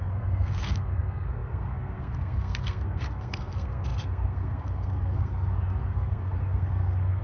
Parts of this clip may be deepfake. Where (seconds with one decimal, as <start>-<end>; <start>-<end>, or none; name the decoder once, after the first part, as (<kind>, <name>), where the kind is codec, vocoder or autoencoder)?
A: 0.0-7.2 (codec, SNAC)